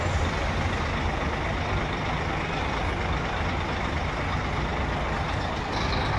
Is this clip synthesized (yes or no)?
no